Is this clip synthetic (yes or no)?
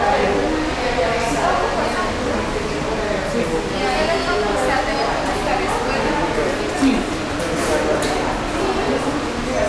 no